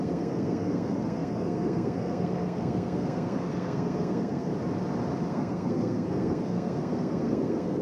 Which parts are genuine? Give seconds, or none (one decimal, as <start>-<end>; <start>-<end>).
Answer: 4.5-5.3